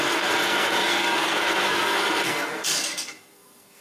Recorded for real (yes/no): no